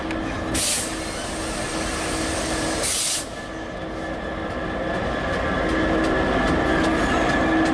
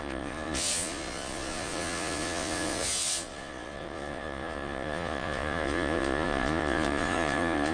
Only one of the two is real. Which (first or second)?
first